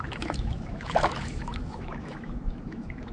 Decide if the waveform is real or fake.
fake